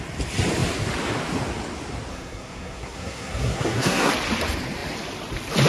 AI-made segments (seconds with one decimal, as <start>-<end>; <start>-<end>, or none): 2.1-4.1